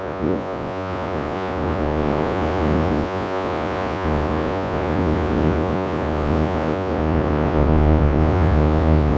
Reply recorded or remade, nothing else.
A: remade